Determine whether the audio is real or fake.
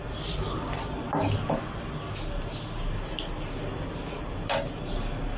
real